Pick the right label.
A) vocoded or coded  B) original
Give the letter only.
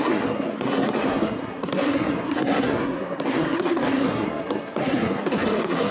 A